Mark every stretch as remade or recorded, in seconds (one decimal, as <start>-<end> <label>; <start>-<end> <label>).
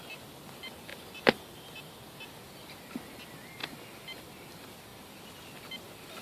0.0-6.2 recorded